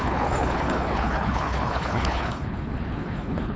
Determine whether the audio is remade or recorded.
remade